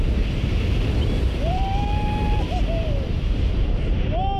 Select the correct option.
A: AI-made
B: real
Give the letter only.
A